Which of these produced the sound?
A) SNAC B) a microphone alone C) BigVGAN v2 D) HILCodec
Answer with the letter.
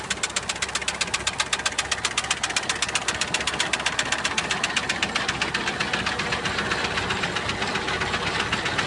B